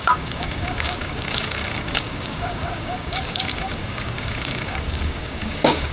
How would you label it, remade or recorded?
remade